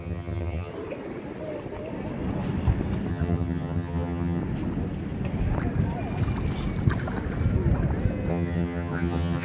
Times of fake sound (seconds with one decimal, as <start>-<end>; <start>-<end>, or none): 0.0-0.7; 3.1-4.4; 8.3-9.4